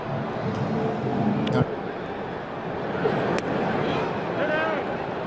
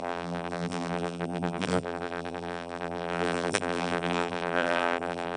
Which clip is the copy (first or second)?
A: second